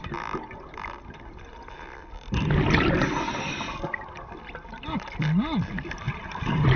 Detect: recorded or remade remade